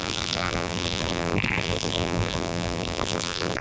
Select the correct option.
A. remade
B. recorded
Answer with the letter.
A